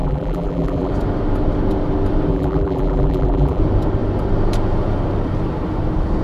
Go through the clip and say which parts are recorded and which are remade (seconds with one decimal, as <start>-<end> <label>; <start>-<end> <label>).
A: 0.0-0.9 remade; 0.9-2.3 recorded; 2.3-3.6 remade; 3.6-6.2 recorded